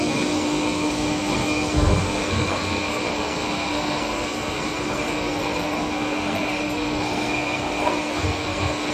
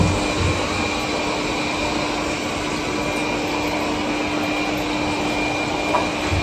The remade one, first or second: first